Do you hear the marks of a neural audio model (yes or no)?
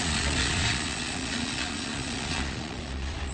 yes